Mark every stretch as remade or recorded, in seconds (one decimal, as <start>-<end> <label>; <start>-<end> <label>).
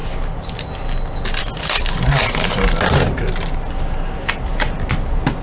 0.0-5.4 recorded